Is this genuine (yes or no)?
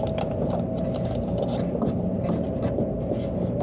yes